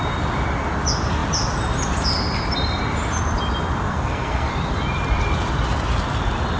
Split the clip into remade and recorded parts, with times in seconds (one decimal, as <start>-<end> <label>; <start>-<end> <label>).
0.0-3.9 recorded; 3.9-4.5 remade; 4.5-6.6 recorded